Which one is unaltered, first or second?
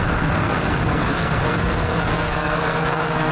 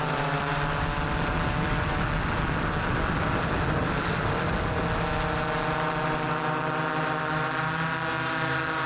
second